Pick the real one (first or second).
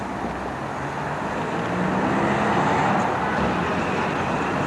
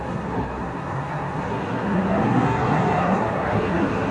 first